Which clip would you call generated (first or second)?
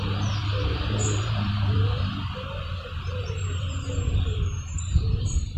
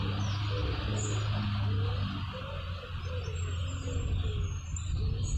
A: first